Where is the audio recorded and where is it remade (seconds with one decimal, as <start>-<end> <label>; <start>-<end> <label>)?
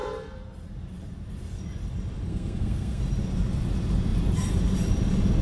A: 0.0-2.3 recorded; 2.3-3.0 remade; 3.0-5.4 recorded